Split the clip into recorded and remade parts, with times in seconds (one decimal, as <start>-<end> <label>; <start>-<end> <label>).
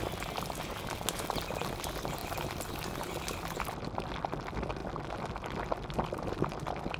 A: 0.0-7.0 recorded